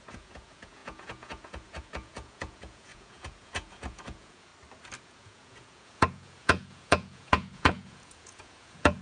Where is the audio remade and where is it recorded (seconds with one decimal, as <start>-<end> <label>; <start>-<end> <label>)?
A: 0.0-4.5 remade; 4.5-5.0 recorded; 5.0-9.0 remade